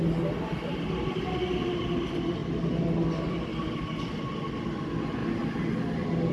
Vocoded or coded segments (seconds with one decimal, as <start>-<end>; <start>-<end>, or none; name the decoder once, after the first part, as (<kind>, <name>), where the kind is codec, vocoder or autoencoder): none

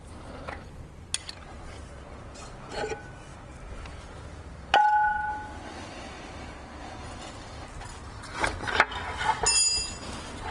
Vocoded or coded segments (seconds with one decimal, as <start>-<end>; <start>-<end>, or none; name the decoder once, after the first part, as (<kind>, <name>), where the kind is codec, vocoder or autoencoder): none

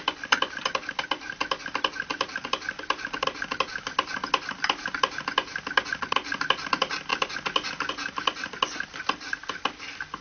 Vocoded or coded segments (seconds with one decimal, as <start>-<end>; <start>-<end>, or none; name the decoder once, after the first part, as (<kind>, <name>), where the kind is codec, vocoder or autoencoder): none

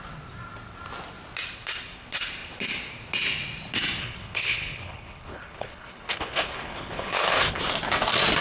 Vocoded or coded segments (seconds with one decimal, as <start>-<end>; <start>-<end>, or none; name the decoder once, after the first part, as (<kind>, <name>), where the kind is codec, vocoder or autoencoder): 4.0-7.6 (codec, HILCodec)

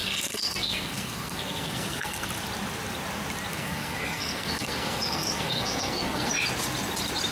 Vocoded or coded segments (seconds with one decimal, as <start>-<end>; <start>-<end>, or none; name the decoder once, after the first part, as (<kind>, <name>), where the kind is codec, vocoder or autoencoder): 0.0-2.3 (codec, SNAC); 3.5-6.3

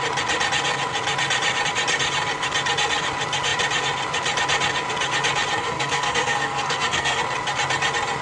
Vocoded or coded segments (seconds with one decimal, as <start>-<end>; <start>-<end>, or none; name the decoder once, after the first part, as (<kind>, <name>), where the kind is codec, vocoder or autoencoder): 5.6-7.2 (codec, SNAC)

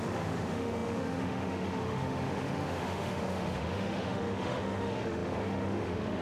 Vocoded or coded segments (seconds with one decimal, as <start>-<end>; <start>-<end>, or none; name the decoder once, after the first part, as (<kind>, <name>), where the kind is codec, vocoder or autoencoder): 0.0-6.2 (autoencoder, DAC-VAE)